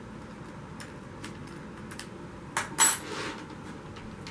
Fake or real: real